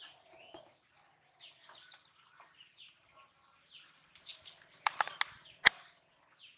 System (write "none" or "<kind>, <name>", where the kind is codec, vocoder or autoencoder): none